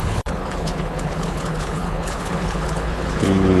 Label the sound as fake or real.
fake